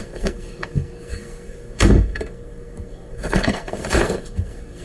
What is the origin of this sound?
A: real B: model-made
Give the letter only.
B